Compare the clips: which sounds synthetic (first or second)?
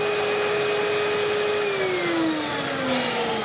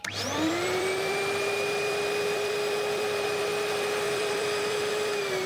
second